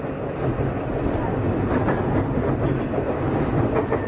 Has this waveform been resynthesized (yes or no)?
no